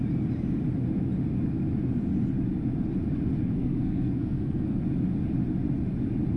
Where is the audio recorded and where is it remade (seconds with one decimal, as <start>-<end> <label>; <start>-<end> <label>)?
0.0-3.4 recorded; 3.4-4.8 remade; 4.8-6.4 recorded